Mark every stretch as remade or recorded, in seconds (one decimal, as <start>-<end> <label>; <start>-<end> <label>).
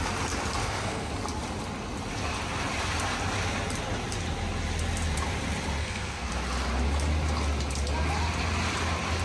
0.0-0.6 recorded; 0.6-1.1 remade; 1.1-5.8 recorded; 5.8-6.3 remade; 6.3-9.2 recorded